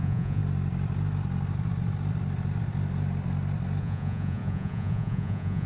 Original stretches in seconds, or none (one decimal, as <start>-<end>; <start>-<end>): 0.4-3.8